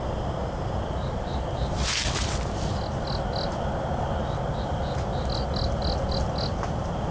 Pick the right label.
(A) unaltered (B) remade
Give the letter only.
A